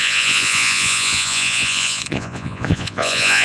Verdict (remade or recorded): remade